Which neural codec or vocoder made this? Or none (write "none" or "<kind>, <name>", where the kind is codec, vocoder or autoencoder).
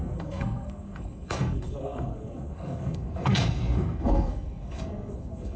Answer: codec, SNAC